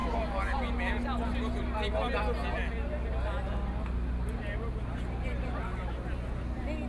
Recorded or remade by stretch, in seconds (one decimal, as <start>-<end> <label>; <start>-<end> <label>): 0.0-6.9 recorded